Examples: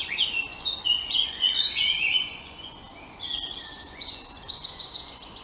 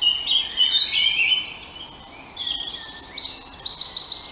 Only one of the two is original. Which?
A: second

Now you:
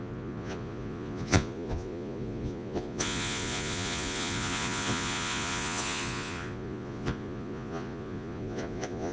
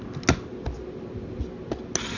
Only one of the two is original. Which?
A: second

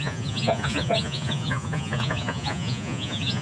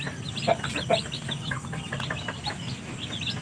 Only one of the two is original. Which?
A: second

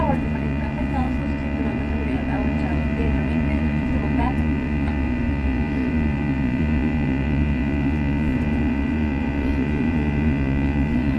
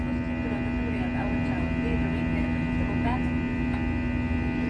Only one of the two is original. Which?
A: second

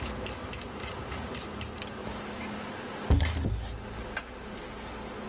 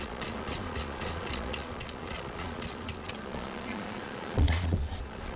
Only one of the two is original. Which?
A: first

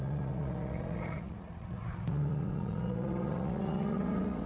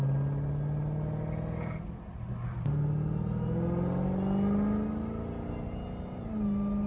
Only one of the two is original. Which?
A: second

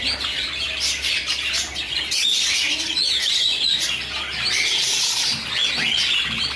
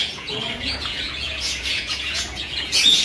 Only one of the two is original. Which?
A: first